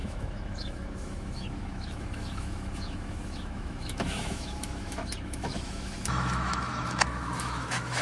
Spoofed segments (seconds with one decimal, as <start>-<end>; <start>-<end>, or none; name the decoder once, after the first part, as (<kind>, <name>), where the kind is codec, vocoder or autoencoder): 0.0-8.0 (autoencoder, DAC-VAE)